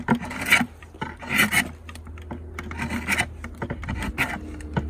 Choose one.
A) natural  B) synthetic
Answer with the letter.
A